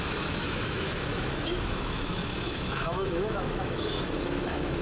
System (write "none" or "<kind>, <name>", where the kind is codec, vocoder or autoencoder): autoencoder, DAC-VAE